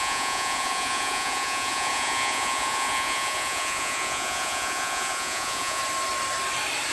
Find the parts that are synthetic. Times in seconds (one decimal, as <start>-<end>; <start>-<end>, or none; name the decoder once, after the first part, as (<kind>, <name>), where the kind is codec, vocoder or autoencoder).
0.0-5.8 (vocoder, Vocos)